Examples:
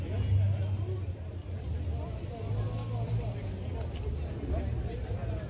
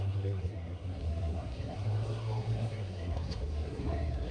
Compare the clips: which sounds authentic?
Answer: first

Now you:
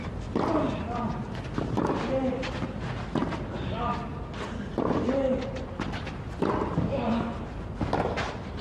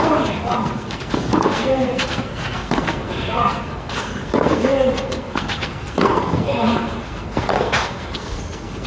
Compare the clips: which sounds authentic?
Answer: first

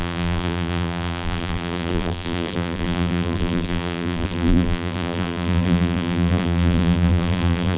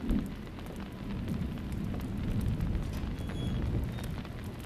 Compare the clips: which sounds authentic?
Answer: second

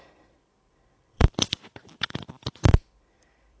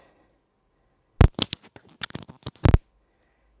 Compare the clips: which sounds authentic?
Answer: second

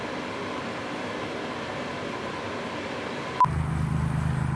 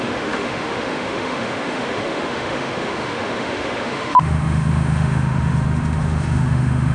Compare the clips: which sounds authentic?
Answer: first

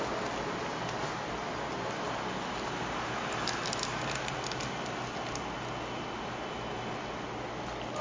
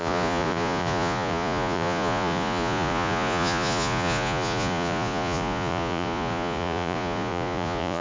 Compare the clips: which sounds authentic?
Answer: first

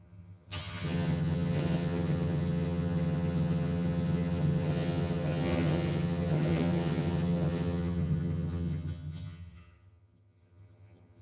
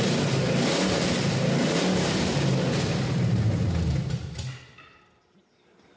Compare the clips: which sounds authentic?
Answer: second